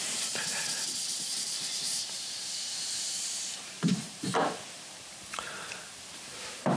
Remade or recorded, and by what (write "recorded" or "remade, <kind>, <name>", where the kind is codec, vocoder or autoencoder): remade, vocoder, BigVGAN v2